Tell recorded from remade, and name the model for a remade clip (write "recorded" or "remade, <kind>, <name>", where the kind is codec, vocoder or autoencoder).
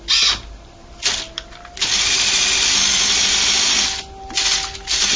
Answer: recorded